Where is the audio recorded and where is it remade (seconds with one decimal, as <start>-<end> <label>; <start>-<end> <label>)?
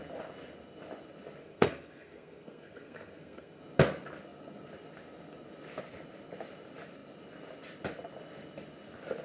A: 0.0-1.4 recorded; 1.4-3.6 remade; 3.6-9.2 recorded